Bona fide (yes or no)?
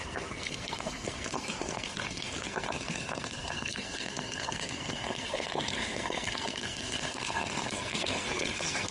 no